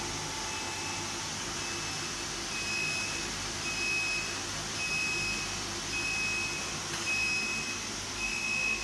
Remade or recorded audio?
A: recorded